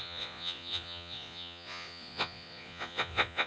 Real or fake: fake